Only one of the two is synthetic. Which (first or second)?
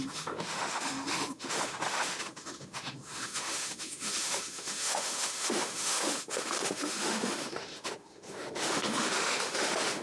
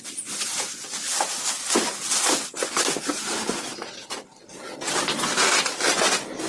first